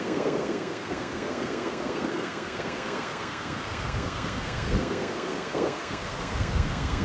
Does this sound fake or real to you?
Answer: fake